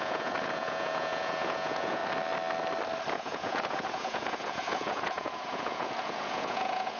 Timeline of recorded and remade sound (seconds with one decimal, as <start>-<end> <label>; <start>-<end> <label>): 0.0-2.0 remade; 2.0-3.1 recorded; 3.1-7.0 remade